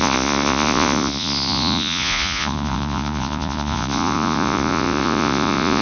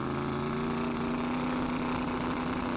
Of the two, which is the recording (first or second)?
second